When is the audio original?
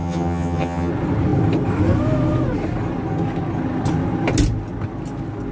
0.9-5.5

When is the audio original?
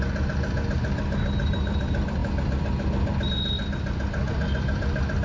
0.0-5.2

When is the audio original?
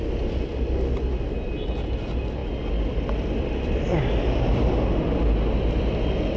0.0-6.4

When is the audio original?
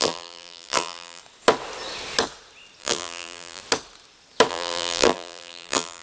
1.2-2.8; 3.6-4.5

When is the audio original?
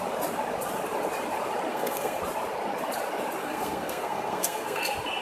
0.0-1.7; 2.2-3.4; 4.8-5.2